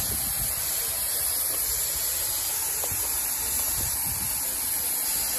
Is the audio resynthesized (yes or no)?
no